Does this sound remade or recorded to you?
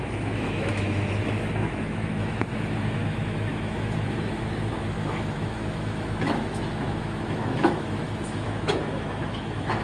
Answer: remade